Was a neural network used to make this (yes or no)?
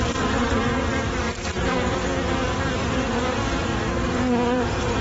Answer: no